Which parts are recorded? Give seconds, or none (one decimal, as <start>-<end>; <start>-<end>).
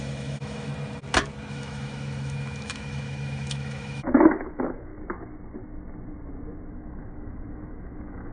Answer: 0.7-1.5; 4.9-6.7